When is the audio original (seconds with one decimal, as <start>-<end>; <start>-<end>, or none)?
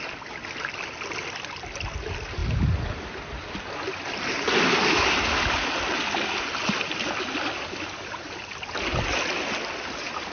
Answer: 0.0-10.3